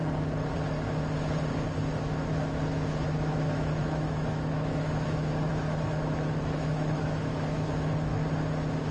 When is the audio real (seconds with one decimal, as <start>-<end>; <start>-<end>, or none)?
0.0-2.0; 8.1-8.9